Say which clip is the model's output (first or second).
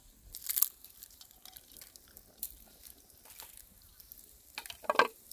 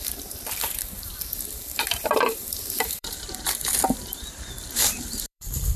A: second